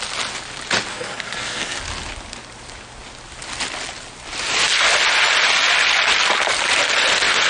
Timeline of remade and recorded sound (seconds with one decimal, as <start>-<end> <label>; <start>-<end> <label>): 0.0-0.9 recorded; 0.9-1.8 remade; 1.8-7.5 recorded